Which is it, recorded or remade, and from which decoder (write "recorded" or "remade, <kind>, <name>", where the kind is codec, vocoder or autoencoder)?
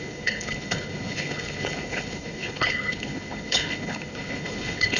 remade, codec, HILCodec